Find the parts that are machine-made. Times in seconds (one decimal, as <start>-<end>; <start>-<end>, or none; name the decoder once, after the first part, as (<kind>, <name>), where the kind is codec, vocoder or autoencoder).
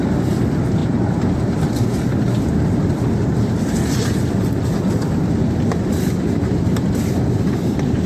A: none